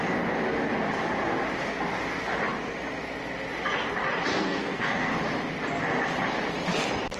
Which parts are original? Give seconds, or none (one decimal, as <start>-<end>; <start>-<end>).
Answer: 0.0-4.3; 5.1-7.2